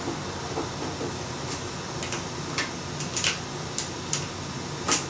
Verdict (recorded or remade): recorded